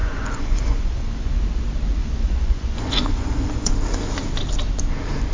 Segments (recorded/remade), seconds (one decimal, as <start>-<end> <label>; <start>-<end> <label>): 0.0-1.3 remade; 1.3-2.0 recorded; 2.0-3.7 remade; 3.7-5.3 recorded

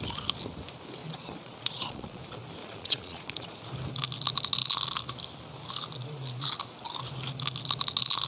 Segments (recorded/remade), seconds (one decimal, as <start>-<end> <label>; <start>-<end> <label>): 0.0-1.0 recorded; 1.0-2.2 remade; 2.2-2.6 recorded; 2.6-3.7 remade; 3.7-8.3 recorded